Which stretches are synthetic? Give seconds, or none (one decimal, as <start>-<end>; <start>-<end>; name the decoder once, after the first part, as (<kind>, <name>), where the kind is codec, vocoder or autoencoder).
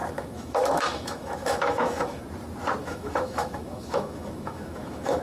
0.0-2.2 (autoencoder, DAC-VAE); 2.8-5.2